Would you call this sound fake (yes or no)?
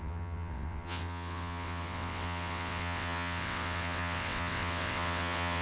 yes